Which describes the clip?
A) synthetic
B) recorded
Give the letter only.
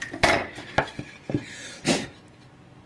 B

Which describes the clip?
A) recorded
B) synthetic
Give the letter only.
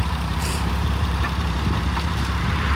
B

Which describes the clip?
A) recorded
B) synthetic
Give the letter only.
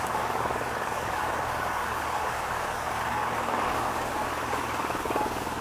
B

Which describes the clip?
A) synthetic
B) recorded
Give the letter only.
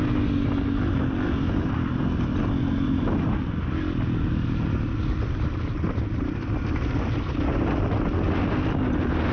B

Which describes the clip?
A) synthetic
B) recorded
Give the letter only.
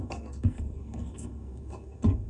A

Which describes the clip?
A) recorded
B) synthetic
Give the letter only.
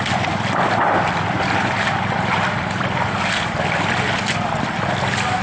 A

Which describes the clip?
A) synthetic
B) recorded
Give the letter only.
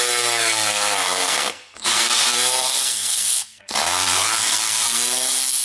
A